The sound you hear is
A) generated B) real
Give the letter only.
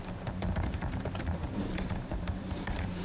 A